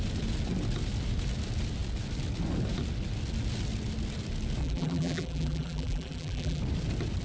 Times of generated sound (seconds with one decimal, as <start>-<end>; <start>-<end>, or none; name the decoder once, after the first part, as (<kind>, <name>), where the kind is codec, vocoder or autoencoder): 4.6-6.6 (vocoder, BigVGAN v2)